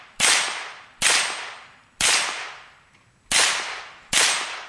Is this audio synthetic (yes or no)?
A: no